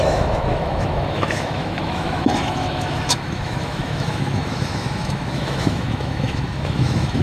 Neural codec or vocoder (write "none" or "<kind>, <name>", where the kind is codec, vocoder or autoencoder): autoencoder, DAC-VAE